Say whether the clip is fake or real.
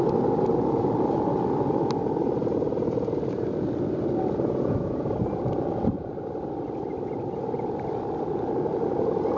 real